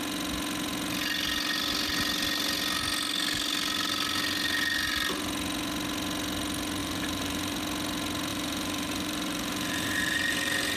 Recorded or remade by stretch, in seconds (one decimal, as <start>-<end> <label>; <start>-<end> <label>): 0.0-6.8 recorded; 6.8-7.6 remade; 7.6-8.3 recorded; 8.3-10.8 remade